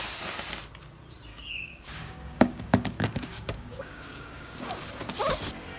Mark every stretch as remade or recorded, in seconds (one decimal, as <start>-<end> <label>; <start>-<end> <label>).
0.0-1.3 recorded; 1.3-4.8 remade; 4.8-5.8 recorded